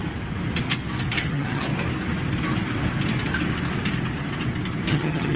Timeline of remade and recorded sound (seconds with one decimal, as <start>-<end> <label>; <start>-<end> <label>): 0.0-1.2 recorded; 1.2-1.7 remade; 1.7-4.9 recorded; 4.9-5.4 remade